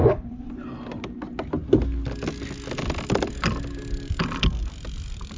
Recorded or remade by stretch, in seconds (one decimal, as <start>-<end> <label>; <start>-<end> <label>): 0.0-0.5 remade; 0.5-5.4 recorded